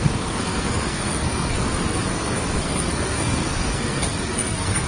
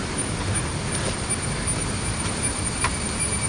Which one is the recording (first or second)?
second